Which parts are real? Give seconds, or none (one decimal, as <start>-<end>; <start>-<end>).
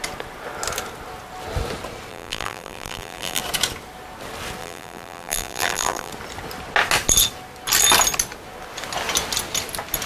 0.0-2.1; 3.4-4.6; 6.1-10.1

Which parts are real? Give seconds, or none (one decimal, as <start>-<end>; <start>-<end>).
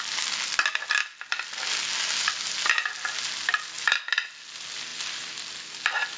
0.0-6.2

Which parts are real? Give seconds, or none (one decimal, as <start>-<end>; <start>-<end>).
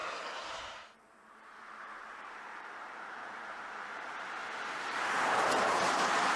4.4-4.9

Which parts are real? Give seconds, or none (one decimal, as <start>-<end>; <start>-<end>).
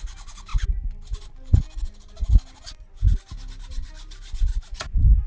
0.0-4.5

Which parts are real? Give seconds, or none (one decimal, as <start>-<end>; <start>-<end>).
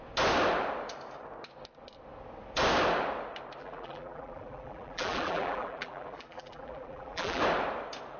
0.0-3.6; 7.4-8.2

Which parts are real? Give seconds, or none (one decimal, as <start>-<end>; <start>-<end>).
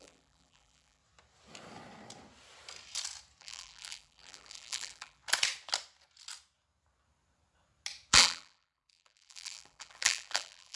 1.0-3.4; 5.2-8.1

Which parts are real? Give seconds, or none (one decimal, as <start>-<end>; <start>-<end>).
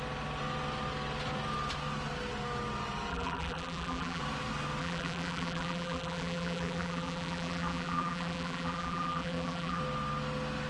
0.0-3.1; 4.2-4.8; 9.8-10.7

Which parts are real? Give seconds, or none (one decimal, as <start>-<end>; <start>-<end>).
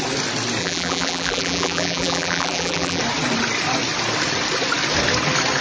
0.0-0.6; 3.0-5.6